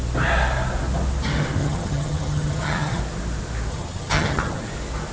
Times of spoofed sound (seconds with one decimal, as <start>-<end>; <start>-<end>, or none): 1.6-3.0; 3.7-4.6